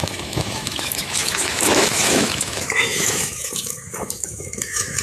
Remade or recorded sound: remade